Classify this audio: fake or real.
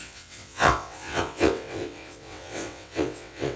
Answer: fake